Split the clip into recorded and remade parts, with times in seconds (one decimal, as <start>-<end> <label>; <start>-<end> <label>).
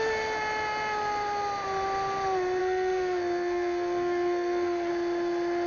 0.0-2.6 recorded; 2.6-4.9 remade; 4.9-5.7 recorded